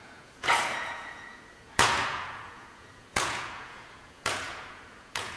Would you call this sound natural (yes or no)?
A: no